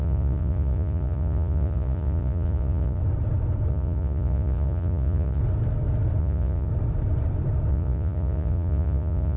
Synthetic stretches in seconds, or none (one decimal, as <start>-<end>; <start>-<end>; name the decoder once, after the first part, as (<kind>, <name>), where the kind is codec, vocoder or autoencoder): 0.0-3.0 (vocoder, Vocos); 3.7-5.4; 6.2-6.7; 7.7-9.4